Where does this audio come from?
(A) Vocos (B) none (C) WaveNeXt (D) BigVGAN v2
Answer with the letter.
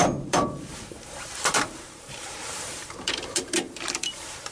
D